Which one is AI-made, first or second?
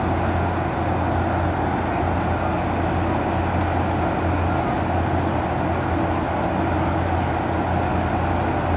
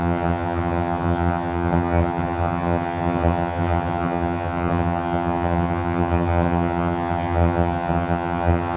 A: second